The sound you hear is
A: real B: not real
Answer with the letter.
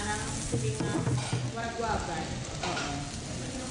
A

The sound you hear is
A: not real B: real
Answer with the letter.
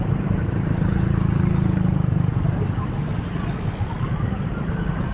B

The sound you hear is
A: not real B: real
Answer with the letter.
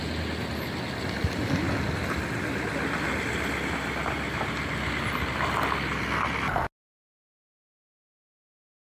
B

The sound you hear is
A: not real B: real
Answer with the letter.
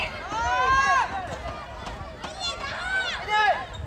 B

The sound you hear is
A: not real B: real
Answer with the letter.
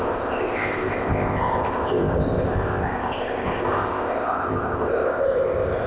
A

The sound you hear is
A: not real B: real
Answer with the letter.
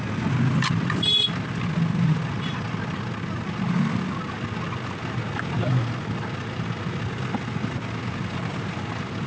B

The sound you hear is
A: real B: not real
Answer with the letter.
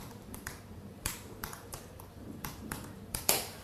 B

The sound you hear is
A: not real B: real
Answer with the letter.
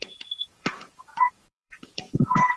A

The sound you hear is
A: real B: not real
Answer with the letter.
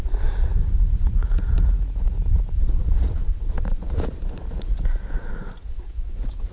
B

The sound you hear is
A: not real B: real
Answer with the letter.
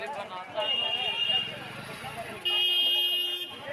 B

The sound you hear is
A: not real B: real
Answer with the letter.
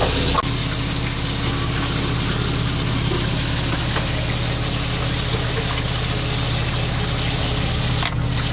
B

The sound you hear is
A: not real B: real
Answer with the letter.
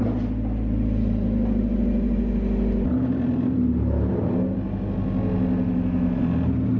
B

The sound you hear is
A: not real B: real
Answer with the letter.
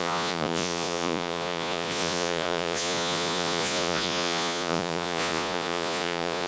A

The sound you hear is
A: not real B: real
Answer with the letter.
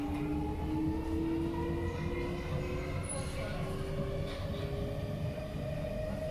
B